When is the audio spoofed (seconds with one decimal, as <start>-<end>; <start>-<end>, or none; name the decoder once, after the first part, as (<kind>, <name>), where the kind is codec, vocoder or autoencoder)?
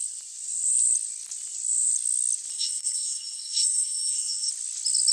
2.5-4.5 (codec, SNAC)